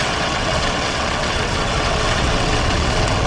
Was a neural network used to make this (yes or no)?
yes